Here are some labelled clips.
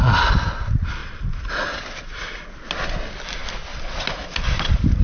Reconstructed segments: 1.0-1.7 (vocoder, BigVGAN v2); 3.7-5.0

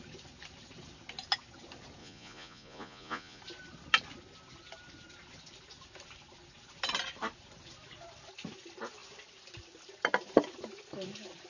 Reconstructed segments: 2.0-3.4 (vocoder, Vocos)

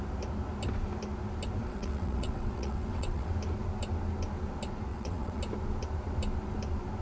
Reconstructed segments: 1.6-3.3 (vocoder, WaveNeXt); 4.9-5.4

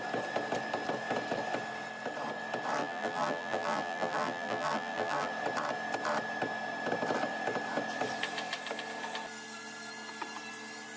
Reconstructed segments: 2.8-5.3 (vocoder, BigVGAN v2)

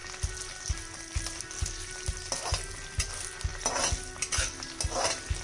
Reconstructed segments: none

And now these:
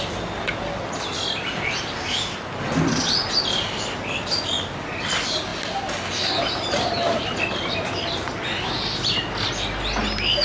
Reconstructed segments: none

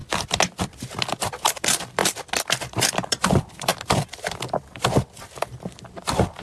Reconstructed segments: 0.6-2.0 (vocoder, BigVGAN v2); 2.6-6.4

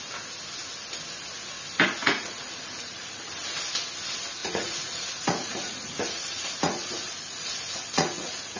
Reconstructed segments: 2.0-3.2 (vocoder, Vocos); 4.4-8.6